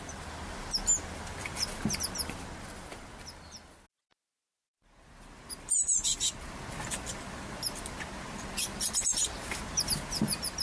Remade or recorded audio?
recorded